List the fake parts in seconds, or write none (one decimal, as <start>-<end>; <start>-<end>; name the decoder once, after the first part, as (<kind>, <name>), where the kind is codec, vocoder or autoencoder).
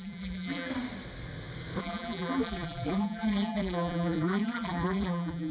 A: 0.0-0.7 (vocoder, BigVGAN v2); 1.8-5.5